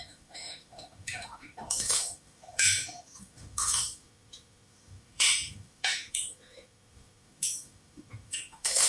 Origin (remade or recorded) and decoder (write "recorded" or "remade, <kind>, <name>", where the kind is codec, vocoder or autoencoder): remade, autoencoder, DAC-VAE